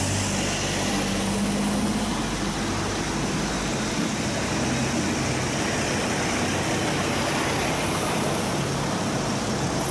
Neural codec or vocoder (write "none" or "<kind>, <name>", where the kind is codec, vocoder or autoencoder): none